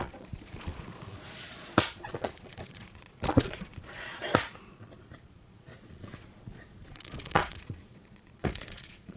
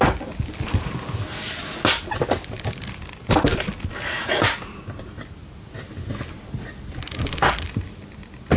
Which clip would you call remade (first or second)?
first